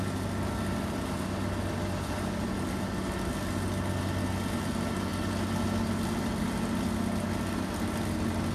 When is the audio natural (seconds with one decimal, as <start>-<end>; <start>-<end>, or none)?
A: 0.0-8.5